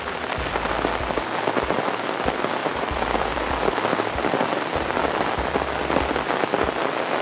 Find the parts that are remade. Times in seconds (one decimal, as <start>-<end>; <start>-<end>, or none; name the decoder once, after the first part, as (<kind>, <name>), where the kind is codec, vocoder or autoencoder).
2.6-3.4 (vocoder, BigVGAN v2)